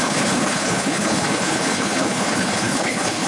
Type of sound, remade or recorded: remade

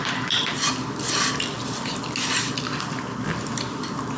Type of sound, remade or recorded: recorded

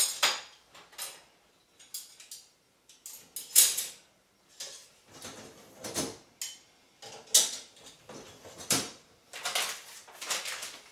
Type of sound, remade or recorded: recorded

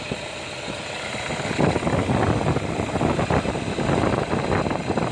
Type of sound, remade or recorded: recorded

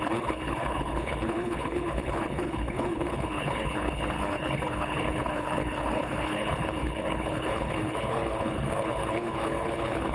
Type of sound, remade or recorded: remade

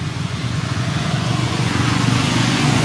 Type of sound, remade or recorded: remade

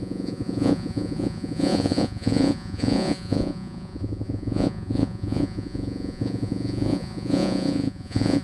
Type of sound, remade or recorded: remade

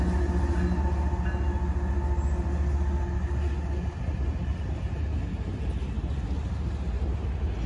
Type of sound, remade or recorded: recorded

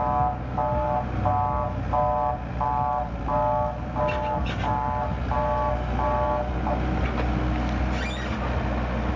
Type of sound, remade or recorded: recorded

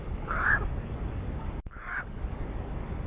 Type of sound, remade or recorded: remade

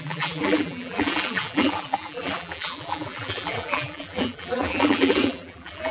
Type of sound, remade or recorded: remade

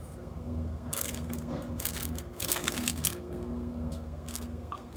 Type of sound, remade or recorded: remade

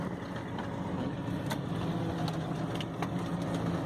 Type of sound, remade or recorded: recorded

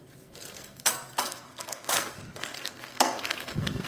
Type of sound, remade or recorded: remade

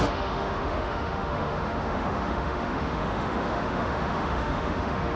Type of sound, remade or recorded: remade